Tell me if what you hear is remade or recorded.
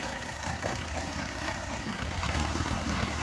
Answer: remade